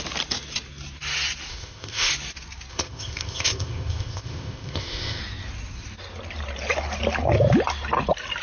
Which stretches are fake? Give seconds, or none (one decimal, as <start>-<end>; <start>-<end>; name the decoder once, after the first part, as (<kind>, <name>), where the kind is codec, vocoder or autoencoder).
1.5-2.1 (codec, ZipCodec); 2.7-5.2